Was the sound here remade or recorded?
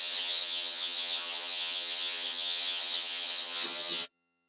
remade